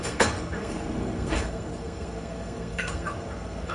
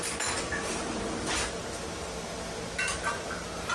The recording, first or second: second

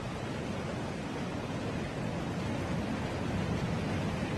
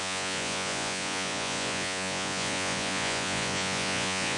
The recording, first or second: first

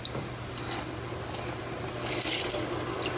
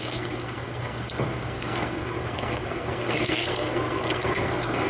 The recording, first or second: first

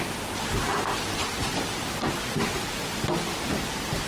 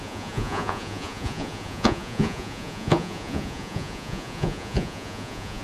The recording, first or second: first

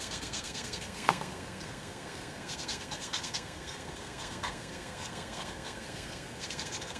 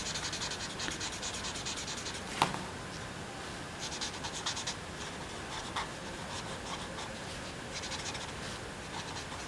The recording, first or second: second